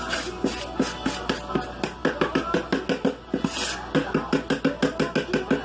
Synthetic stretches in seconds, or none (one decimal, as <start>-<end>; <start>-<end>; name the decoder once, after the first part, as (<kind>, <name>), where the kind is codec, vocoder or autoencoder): none